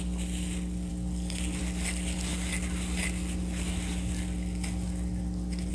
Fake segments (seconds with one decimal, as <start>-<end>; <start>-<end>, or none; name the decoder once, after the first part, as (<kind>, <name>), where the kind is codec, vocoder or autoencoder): none